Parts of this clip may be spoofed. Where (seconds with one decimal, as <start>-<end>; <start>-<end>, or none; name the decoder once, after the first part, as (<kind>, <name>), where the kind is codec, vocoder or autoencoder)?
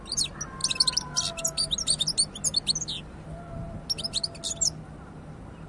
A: none